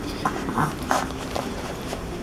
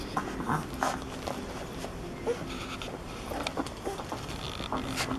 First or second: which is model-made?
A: first